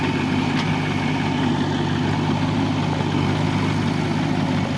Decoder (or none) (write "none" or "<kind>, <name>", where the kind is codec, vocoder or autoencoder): none